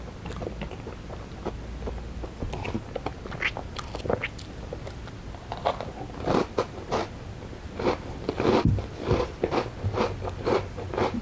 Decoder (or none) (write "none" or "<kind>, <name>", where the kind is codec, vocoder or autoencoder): none